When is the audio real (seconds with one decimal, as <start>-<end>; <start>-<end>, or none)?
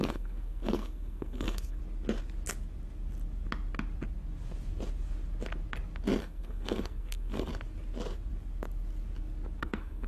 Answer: 1.8-6.2; 7.5-9.6